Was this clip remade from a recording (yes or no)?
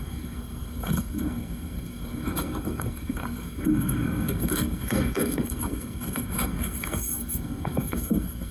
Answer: yes